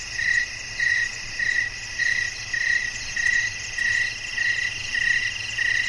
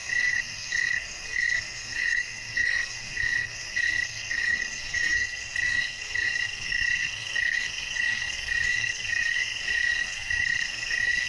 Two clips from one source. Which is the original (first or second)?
first